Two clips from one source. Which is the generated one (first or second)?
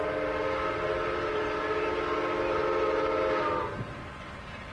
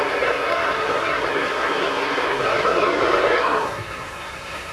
second